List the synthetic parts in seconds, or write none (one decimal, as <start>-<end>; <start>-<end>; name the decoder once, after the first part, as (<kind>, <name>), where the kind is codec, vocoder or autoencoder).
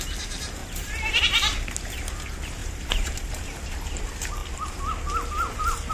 0.6-1.2 (vocoder, BigVGAN v2); 2.6-3.9